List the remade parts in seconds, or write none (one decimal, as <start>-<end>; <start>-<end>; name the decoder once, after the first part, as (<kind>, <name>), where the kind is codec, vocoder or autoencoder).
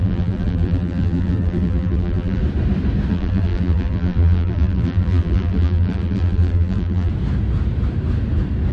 0.0-2.4 (vocoder, BigVGAN v2); 3.1-7.1